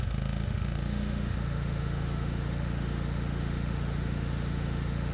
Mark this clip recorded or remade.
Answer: remade